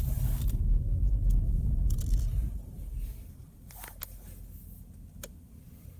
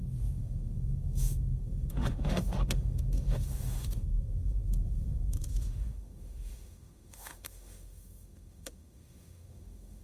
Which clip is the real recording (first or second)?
first